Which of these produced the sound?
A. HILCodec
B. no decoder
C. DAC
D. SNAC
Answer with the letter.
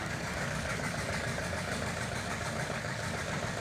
C